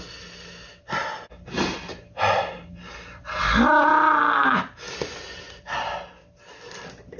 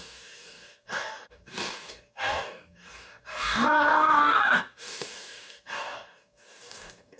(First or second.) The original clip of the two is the first